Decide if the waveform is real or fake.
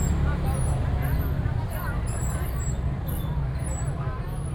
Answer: real